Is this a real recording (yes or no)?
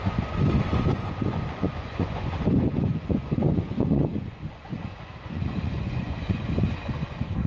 no